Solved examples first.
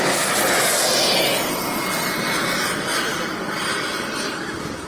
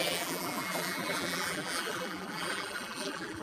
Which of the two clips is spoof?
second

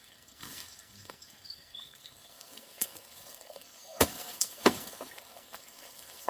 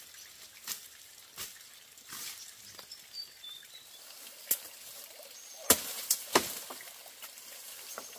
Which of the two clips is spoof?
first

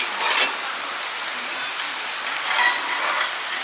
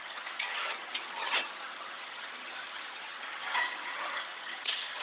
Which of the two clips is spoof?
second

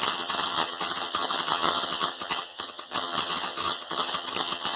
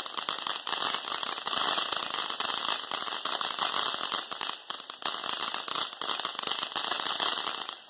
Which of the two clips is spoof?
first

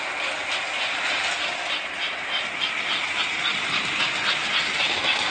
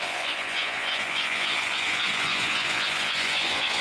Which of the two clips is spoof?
second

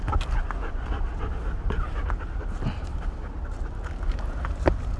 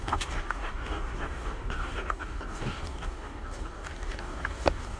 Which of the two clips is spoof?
second